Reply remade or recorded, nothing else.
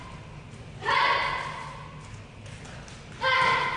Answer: recorded